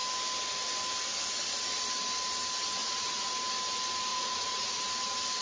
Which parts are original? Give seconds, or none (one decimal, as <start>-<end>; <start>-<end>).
0.0-2.8; 3.3-4.1; 4.8-5.4